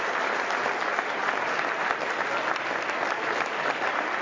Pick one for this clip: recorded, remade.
recorded